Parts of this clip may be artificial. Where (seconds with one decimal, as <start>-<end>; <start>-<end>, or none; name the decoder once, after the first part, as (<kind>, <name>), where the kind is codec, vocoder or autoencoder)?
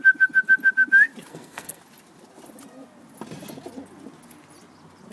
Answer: 1.3-1.8 (codec, SNAC)